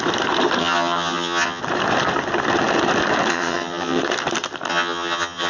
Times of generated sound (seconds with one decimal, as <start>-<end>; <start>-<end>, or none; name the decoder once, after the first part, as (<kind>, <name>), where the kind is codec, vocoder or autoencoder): 0.6-1.6 (vocoder, HiFi-GAN); 3.3-4.0; 4.7-5.5